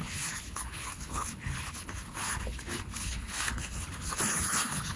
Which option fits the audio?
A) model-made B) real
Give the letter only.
A